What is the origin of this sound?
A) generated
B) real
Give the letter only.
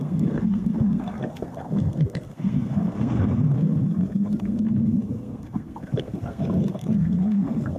A